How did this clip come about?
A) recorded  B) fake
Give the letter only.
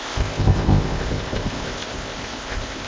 B